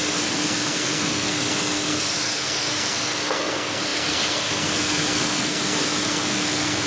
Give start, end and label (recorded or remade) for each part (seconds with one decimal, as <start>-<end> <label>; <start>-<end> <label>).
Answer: 0.0-6.9 remade